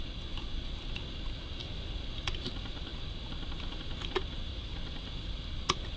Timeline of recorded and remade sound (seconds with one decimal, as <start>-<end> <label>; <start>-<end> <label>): 0.0-6.0 recorded